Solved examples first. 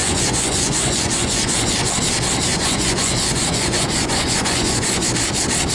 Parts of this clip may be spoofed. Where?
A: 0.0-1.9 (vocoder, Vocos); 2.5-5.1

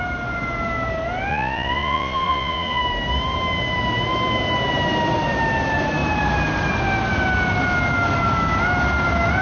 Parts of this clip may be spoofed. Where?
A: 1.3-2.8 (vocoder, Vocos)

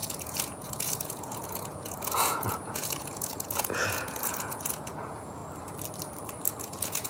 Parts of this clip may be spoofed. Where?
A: 0.0-5.4 (vocoder, Vocos); 6.5-7.1

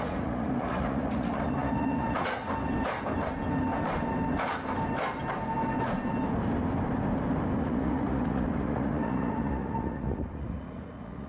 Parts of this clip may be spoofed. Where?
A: 0.0-2.4 (vocoder, Vocos); 7.6-11.3